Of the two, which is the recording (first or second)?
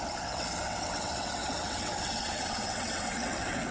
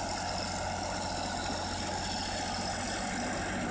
second